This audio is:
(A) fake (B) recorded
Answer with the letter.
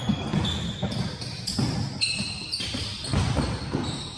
B